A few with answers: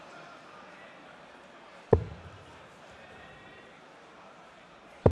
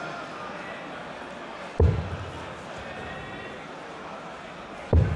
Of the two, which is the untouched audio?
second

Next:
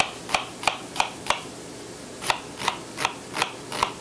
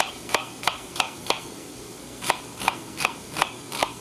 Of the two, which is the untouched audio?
first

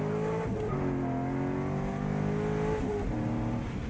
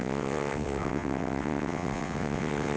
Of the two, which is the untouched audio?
first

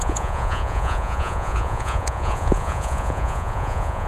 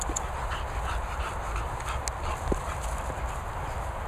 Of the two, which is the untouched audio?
second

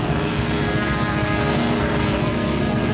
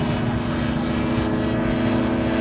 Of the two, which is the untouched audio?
second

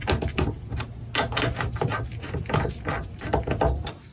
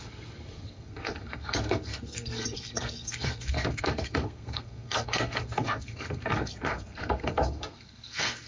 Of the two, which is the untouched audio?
first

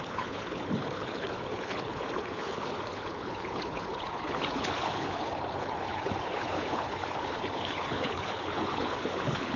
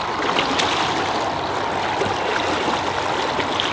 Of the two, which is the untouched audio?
second